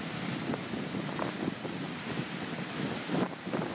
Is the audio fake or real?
real